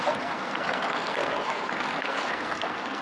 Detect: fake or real fake